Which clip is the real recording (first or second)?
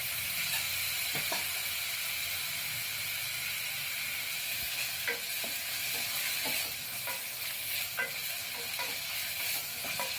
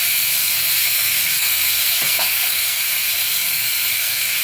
first